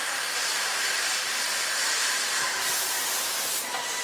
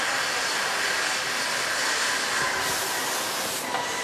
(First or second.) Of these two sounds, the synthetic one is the first